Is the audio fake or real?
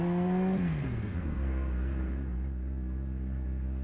fake